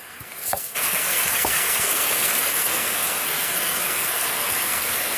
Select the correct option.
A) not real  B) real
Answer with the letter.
A